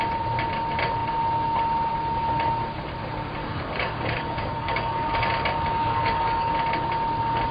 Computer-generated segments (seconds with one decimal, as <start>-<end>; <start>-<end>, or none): 3.4-6.5

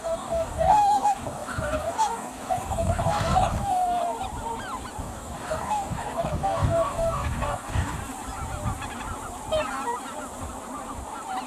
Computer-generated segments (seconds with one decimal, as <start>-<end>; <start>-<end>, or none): 0.0-4.0; 5.0-8.0

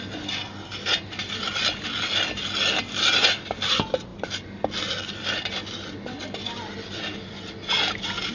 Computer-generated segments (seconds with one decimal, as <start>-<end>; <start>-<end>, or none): none

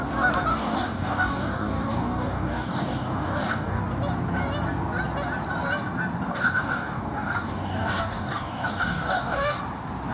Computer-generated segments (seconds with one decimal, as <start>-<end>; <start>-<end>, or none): 0.5-3.8; 6.3-9.6

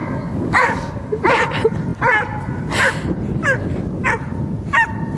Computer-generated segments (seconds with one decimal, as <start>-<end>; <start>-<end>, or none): 0.0-1.2

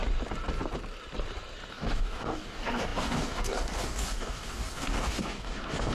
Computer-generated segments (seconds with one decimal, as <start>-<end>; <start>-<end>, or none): 1.7-5.9

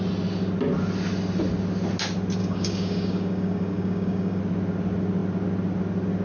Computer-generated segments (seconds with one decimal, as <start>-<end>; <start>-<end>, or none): 2.4-4.4

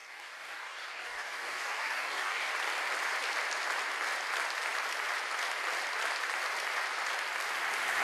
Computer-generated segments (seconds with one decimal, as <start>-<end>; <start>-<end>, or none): 0.0-2.5